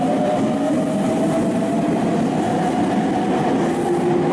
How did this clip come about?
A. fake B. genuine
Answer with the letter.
B